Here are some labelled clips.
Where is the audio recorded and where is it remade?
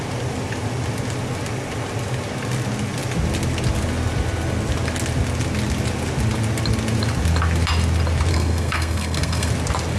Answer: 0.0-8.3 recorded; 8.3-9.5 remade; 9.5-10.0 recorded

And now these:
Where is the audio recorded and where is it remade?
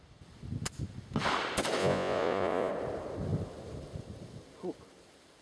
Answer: 0.0-1.8 recorded; 1.8-2.7 remade; 2.7-5.4 recorded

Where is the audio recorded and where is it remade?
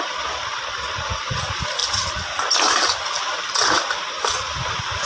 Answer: 0.0-5.1 recorded